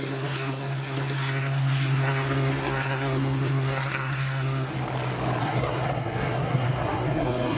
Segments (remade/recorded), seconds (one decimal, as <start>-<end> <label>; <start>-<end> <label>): 0.0-4.7 remade; 4.7-5.4 recorded; 5.4-7.6 remade